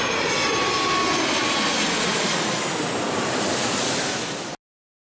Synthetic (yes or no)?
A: no